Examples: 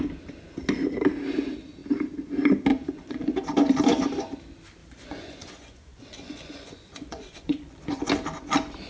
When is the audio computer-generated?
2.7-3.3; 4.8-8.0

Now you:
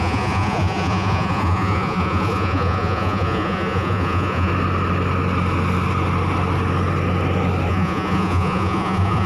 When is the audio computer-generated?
0.0-4.5; 7.7-9.3

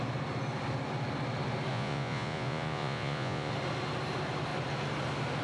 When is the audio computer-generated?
1.7-3.5

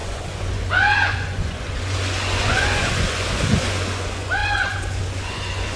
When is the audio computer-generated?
0.0-5.8

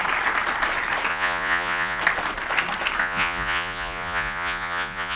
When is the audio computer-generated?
1.1-2.0; 3.0-5.2

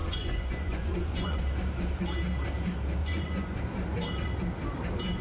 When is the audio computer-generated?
0.0-1.4; 3.0-3.6

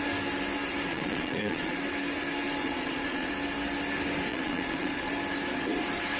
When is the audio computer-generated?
0.9-1.8; 2.6-3.3; 4.3-5.1